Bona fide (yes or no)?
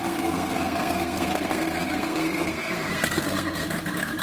no